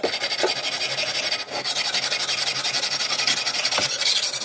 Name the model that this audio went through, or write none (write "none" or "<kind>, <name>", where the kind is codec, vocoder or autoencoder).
none